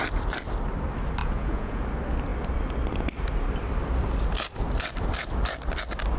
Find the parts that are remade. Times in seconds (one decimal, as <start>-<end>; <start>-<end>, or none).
1.2-1.8